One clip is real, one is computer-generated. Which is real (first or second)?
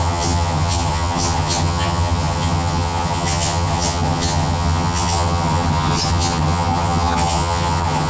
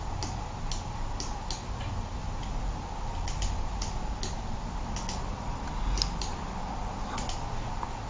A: second